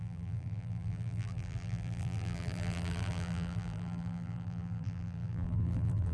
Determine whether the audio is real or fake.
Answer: fake